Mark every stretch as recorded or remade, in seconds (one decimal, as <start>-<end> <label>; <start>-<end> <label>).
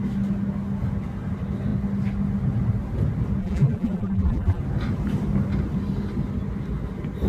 0.0-3.4 recorded; 3.4-4.6 remade; 4.6-7.3 recorded